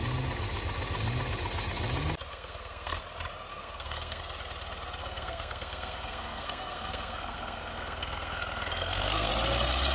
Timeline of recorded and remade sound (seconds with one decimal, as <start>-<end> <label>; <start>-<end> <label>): 0.0-2.3 recorded; 2.3-3.0 remade; 3.0-3.5 recorded; 3.5-4.2 remade; 4.2-5.0 recorded; 5.0-9.3 remade; 9.3-9.9 recorded